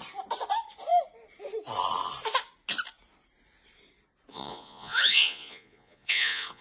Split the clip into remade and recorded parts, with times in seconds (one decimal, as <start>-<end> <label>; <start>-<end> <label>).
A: 0.0-4.3 recorded; 4.3-6.6 remade